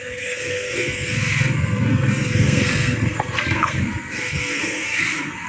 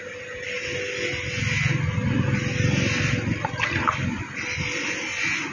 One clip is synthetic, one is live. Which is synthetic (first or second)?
first